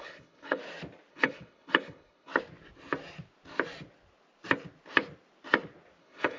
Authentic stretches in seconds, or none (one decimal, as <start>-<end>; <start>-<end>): 0.6-1.1; 2.3-6.0